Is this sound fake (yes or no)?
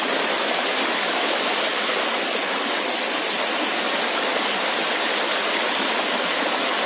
no